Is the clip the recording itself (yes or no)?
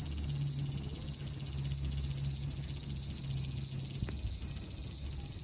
yes